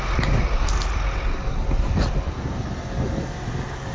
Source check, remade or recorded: recorded